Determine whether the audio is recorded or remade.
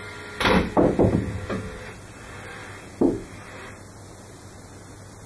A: recorded